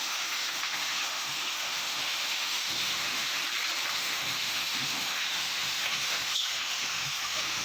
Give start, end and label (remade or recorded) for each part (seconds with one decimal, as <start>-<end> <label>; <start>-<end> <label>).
0.0-3.4 remade; 3.4-3.9 recorded; 3.9-7.6 remade